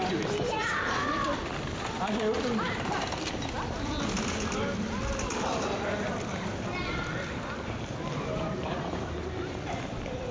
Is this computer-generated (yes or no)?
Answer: no